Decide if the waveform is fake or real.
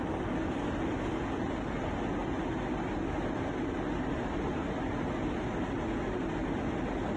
real